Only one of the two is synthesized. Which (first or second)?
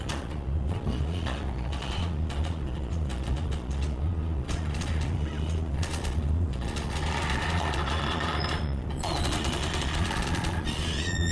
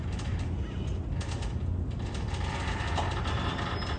first